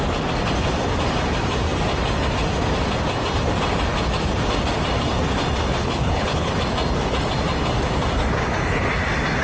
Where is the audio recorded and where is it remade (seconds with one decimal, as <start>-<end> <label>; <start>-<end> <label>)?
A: 0.0-5.8 recorded; 5.8-6.5 remade; 6.5-9.4 recorded